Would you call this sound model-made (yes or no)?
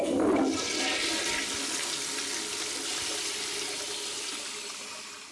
no